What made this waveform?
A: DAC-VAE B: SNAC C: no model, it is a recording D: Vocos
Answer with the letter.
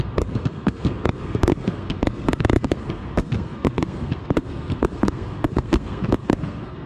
B